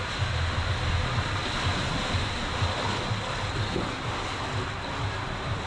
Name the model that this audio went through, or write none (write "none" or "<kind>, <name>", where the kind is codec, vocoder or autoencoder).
none